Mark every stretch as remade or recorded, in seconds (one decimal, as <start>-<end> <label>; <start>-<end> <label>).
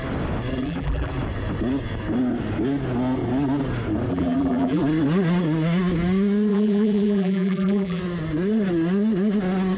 0.0-0.6 recorded; 0.6-1.1 remade; 1.1-4.1 recorded; 4.1-4.8 remade; 4.8-6.5 recorded; 6.5-8.0 remade; 8.0-9.8 recorded